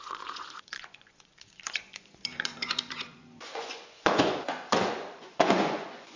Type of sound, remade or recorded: remade